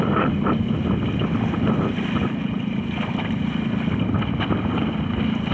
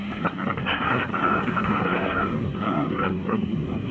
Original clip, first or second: first